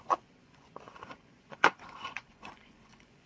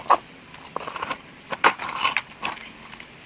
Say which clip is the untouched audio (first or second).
second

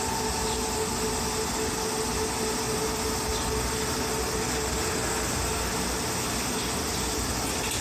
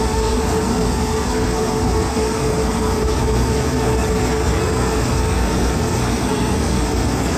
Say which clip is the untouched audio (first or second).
first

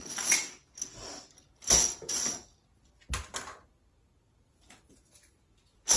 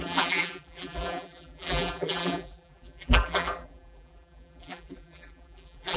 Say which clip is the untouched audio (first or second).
first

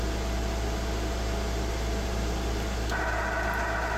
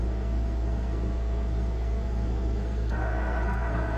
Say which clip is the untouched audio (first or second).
first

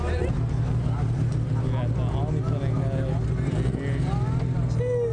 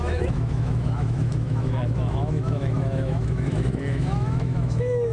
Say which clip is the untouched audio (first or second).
first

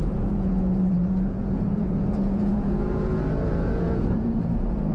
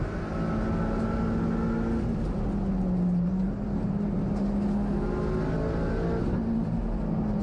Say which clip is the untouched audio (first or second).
second